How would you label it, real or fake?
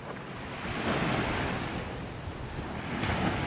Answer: real